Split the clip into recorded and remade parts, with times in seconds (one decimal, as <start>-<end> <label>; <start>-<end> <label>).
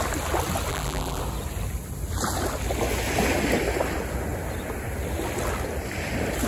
0.0-0.7 recorded; 0.7-1.2 remade; 1.2-6.5 recorded